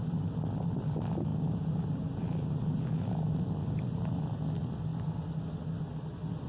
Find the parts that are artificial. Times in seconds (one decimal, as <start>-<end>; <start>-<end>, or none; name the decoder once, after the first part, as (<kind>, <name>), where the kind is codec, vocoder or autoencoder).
none